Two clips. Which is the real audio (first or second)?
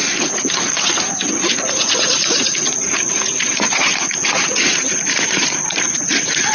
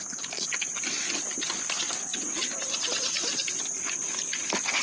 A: second